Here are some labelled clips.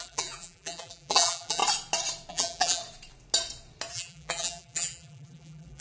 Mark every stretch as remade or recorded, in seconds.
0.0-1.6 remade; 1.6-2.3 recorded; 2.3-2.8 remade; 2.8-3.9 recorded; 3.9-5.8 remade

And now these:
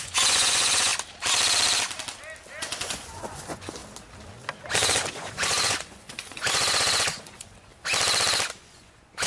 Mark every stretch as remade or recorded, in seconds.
0.0-0.9 remade; 0.9-2.6 recorded; 2.6-3.8 remade; 3.8-5.1 recorded; 5.1-7.7 remade; 7.7-8.6 recorded; 8.6-9.3 remade

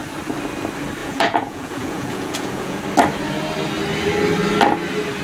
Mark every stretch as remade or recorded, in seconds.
0.0-1.0 recorded; 1.0-2.8 remade; 2.8-5.2 recorded

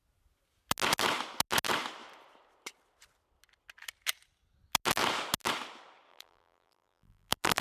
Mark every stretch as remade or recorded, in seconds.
0.0-6.1 recorded; 6.1-7.6 remade

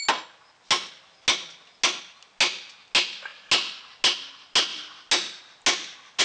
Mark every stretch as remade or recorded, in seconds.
0.0-6.2 recorded

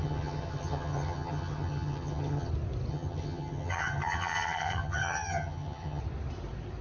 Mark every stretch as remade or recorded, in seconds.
0.0-2.5 remade; 2.5-2.9 recorded; 2.9-6.0 remade; 6.0-6.8 recorded